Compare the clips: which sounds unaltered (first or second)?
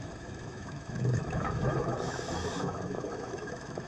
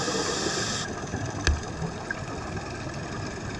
second